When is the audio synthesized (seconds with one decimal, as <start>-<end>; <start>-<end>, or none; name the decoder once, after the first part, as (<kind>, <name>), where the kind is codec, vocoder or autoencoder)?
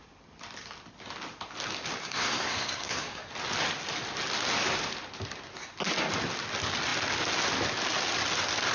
2.0-3.3 (codec, SNAC)